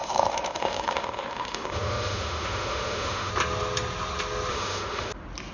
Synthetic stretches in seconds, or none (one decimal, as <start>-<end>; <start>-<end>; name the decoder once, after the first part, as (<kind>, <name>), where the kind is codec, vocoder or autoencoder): 0.0-3.3 (autoencoder, DAC-VAE); 4.5-5.1